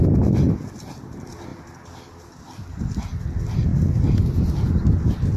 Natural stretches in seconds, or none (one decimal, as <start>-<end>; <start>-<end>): 0.0-5.4